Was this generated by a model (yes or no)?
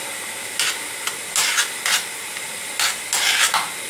no